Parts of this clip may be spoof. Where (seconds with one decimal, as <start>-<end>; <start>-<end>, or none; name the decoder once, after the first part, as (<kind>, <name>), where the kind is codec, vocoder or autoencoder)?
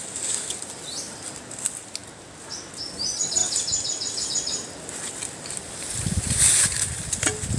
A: none